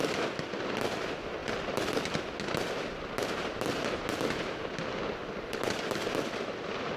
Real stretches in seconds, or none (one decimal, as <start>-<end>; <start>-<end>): 0.0-1.4; 2.3-7.0